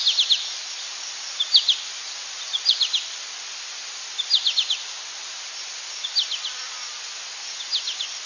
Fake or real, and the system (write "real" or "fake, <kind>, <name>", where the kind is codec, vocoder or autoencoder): real